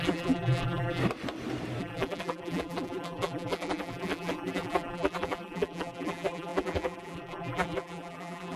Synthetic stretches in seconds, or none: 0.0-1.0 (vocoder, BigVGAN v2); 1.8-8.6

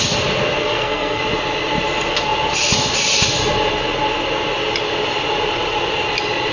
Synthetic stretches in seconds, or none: 0.6-1.2 (codec, SNAC)